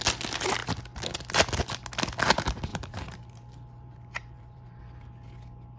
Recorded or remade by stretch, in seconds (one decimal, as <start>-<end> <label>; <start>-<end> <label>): 0.0-2.7 recorded; 2.7-4.8 remade; 4.8-5.8 recorded